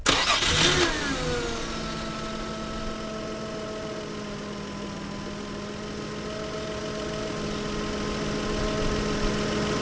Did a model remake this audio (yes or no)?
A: no